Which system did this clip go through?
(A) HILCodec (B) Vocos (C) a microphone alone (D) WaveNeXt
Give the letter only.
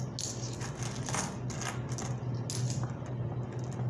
C